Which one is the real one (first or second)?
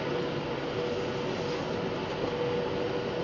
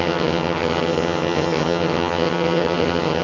first